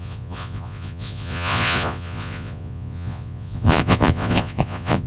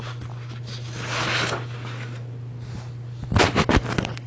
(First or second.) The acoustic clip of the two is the second